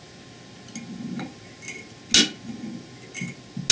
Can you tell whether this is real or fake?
real